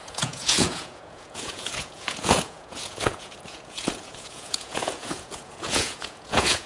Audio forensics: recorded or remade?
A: remade